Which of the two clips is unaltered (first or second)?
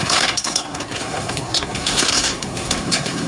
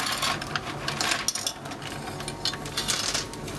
second